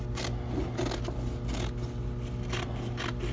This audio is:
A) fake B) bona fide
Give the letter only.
B